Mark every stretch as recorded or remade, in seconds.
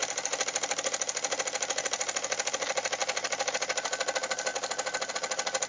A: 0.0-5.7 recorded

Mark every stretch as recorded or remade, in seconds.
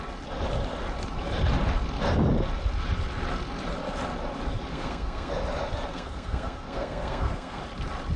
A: 0.0-4.7 recorded; 4.7-5.3 remade; 5.3-5.9 recorded; 5.9-7.6 remade; 7.6-8.2 recorded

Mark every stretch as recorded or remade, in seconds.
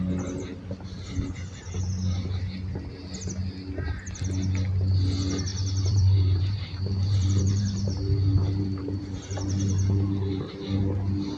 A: 0.0-5.5 recorded; 5.5-10.5 remade; 10.5-11.4 recorded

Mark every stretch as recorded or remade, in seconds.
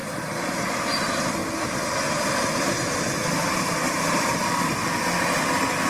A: 0.0-0.7 remade; 0.7-1.4 recorded; 1.4-4.9 remade; 4.9-5.9 recorded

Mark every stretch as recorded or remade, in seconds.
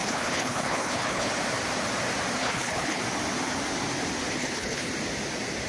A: 0.0-1.3 remade; 1.3-2.4 recorded; 2.4-3.0 remade; 3.0-4.4 recorded; 4.4-4.9 remade; 4.9-5.7 recorded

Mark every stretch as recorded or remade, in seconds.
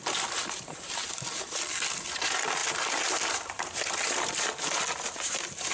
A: 0.0-0.4 recorded; 0.4-1.0 remade; 1.0-2.6 recorded; 2.6-3.6 remade; 3.6-5.7 recorded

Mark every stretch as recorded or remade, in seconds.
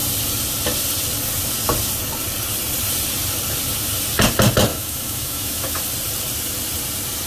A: 0.0-4.7 recorded; 4.7-5.8 remade; 5.8-7.3 recorded